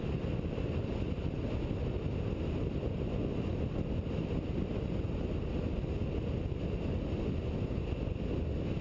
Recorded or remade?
recorded